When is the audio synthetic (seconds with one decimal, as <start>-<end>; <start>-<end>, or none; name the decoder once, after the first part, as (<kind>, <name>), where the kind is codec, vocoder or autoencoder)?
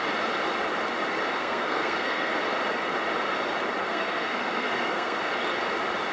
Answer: 1.4-2.3 (codec, SNAC); 3.8-5.2